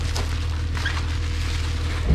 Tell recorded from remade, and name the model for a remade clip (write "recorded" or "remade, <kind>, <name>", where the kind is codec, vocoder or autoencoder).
recorded